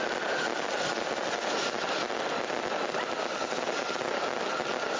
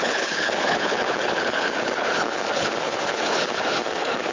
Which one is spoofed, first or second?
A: second